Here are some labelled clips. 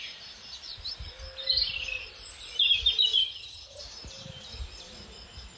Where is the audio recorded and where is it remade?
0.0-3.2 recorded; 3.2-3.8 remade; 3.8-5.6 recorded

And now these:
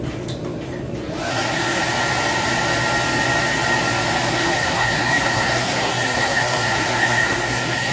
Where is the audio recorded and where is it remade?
0.0-1.3 recorded; 1.3-1.8 remade; 1.8-4.3 recorded; 4.3-7.9 remade